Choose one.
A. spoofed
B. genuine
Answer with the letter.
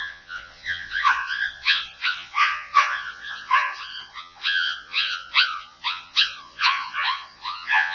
A